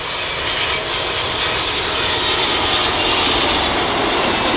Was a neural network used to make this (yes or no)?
no